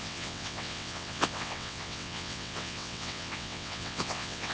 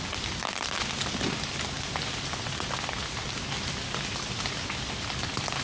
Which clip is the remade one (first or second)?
first